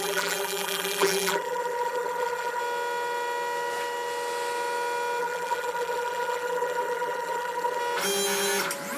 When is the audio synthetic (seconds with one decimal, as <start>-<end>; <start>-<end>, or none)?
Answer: 0.0-2.6; 5.2-7.8